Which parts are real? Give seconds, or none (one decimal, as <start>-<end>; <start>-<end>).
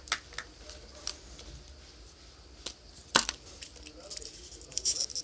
0.0-3.0; 3.6-5.2